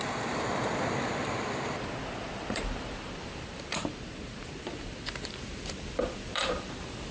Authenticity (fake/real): fake